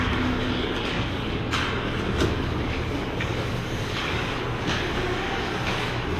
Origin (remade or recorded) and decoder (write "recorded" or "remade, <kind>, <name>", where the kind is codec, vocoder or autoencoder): remade, codec, DAC